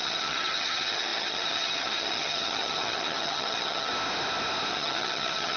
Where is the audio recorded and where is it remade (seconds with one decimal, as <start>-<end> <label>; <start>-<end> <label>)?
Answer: 0.0-3.9 remade; 3.9-4.7 recorded; 4.7-5.6 remade